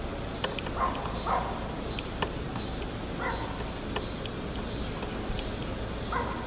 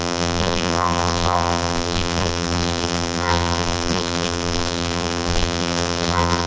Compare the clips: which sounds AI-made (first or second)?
second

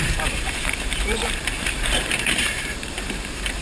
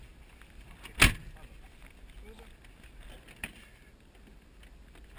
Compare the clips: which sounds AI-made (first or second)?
first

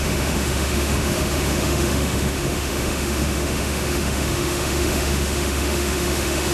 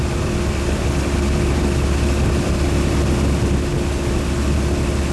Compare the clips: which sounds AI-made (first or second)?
first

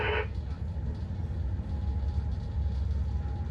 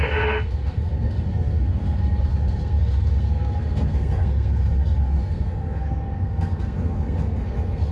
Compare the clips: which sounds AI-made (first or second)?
second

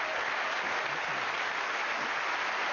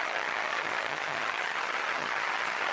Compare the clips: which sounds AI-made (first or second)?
second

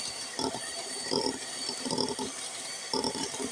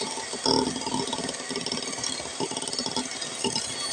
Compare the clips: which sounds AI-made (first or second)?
first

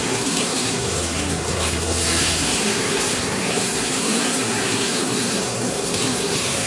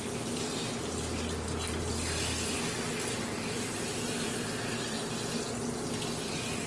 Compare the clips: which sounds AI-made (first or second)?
first